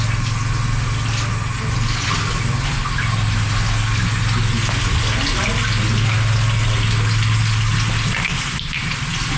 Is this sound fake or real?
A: real